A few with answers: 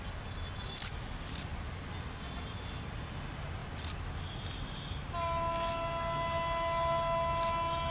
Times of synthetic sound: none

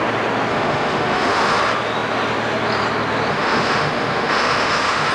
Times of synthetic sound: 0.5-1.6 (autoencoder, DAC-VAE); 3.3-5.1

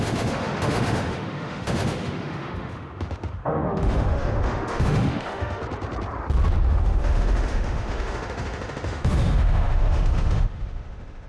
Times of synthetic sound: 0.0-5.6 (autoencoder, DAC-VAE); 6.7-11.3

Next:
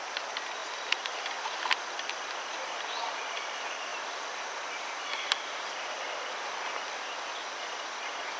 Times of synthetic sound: none

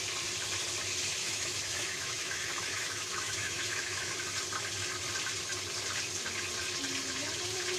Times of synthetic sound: 1.2-4.1 (autoencoder, DAC-VAE)